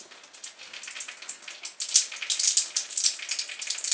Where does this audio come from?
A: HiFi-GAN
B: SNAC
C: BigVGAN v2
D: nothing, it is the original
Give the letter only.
D